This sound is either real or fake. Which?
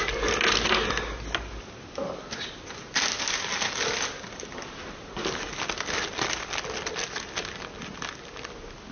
real